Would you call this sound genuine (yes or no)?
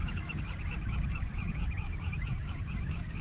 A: no